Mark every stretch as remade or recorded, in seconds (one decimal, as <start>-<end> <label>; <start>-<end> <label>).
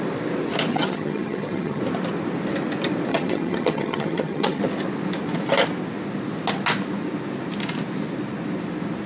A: 0.0-0.7 recorded; 0.7-1.8 remade; 1.8-3.1 recorded; 3.1-4.6 remade; 4.6-9.1 recorded